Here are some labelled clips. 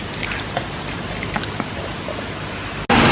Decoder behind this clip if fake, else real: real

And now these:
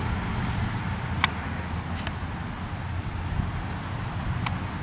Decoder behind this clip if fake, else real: real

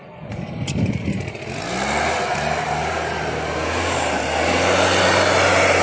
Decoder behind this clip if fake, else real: real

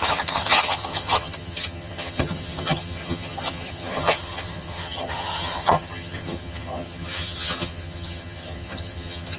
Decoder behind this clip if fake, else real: fake, vocoder, HiFi-GAN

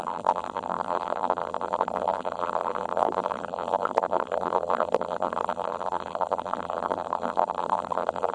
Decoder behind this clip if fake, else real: fake, vocoder, BigVGAN v2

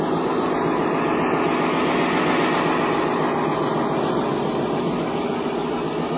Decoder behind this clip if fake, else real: real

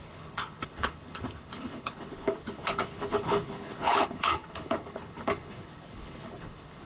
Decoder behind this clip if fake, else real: fake, codec, HILCodec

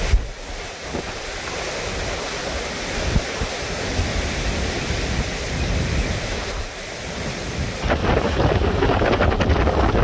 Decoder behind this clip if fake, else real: real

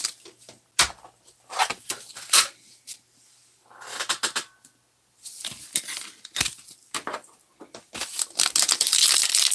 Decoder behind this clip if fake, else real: real